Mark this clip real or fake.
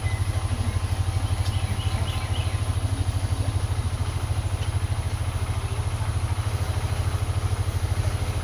real